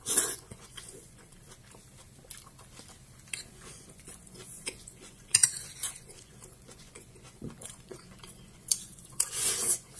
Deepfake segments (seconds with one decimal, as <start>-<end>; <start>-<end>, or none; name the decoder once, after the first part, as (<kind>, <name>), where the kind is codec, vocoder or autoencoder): 0.0-1.3 (vocoder, Vocos); 3.5-10.0